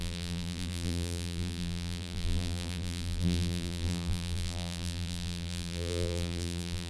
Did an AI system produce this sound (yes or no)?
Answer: yes